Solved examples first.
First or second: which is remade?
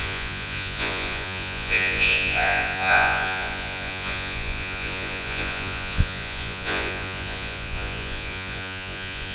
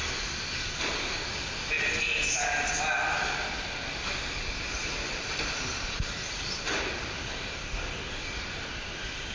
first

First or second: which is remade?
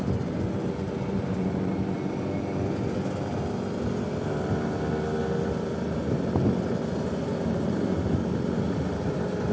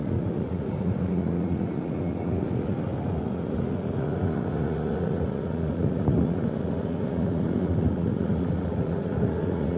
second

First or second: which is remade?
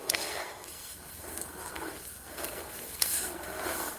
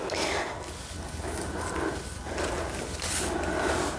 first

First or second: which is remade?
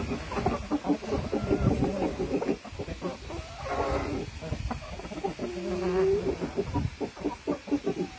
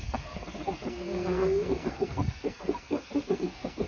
second